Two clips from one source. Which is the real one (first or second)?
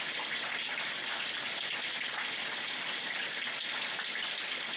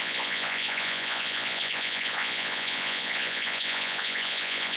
first